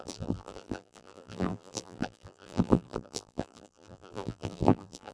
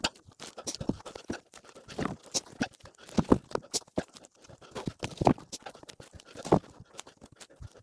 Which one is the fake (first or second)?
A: first